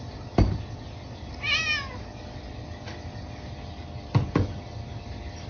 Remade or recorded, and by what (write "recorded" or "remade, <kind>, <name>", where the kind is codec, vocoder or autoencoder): recorded